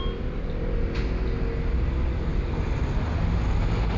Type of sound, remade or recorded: recorded